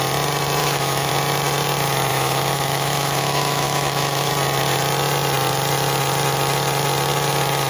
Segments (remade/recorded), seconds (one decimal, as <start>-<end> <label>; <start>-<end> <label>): 0.0-0.6 recorded; 0.6-1.1 remade; 1.1-2.1 recorded; 2.1-4.3 remade; 4.3-7.7 recorded